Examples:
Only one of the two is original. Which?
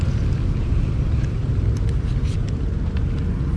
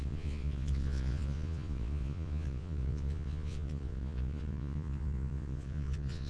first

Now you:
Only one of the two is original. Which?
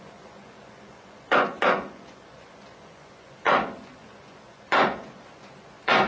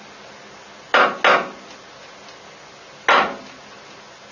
second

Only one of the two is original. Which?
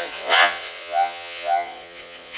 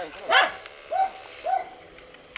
second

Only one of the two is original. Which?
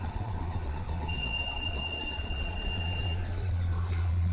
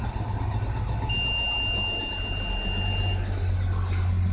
second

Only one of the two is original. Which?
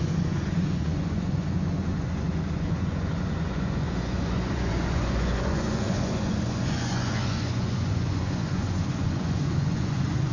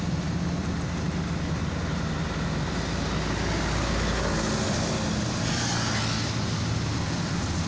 second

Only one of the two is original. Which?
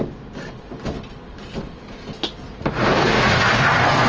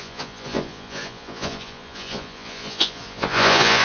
first